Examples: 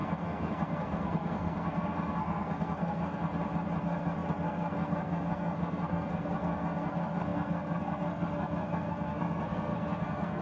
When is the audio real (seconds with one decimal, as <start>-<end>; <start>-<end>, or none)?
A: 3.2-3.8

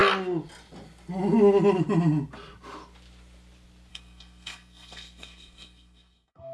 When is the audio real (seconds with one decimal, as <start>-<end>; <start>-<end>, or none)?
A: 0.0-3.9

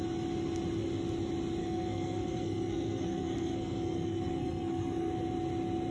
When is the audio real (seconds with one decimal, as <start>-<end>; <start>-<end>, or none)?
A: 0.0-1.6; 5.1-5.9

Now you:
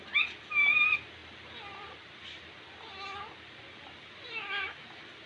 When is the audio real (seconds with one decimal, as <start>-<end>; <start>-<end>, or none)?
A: 0.0-5.3